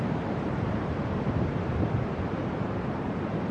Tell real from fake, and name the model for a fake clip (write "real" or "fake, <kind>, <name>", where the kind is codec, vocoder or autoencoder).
fake, vocoder, BigVGAN v2